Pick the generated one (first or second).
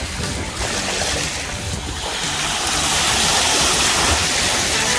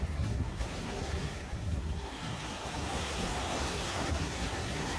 second